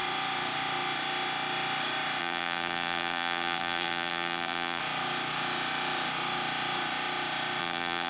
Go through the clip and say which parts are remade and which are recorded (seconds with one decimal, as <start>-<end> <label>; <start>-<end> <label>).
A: 0.0-2.2 recorded; 2.2-4.8 remade; 4.8-7.6 recorded; 7.6-8.1 remade